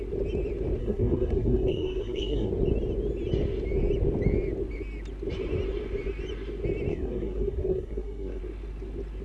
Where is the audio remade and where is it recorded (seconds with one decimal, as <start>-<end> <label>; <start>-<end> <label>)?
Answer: 0.0-0.8 recorded; 0.8-2.5 remade; 2.5-6.9 recorded; 6.9-8.4 remade; 8.4-9.2 recorded